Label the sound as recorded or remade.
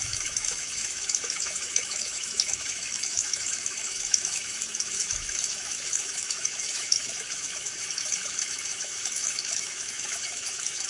remade